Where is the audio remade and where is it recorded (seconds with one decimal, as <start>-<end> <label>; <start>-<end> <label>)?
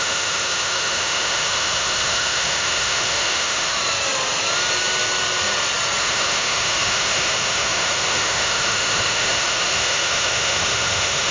0.0-3.8 remade; 3.8-6.0 recorded; 6.0-11.3 remade